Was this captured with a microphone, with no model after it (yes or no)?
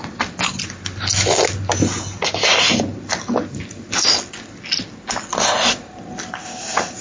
yes